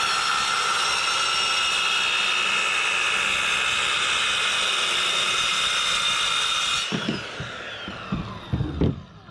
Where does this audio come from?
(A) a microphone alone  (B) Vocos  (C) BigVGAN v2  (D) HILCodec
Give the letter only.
A